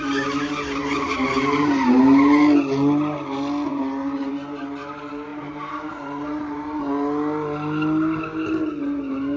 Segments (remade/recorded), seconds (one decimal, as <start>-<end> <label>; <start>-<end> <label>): 0.0-0.8 recorded; 0.8-2.0 remade; 2.0-3.7 recorded; 3.7-4.3 remade; 4.3-5.3 recorded; 5.3-6.8 remade; 6.8-9.4 recorded